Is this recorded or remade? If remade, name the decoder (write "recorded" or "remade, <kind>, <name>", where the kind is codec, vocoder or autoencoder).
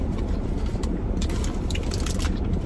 remade, vocoder, BigVGAN v2